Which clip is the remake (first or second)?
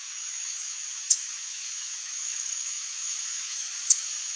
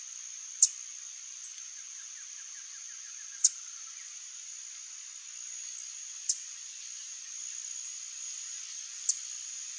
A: first